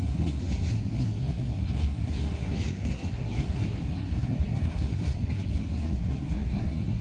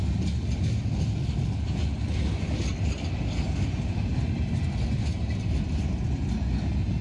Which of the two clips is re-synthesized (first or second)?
first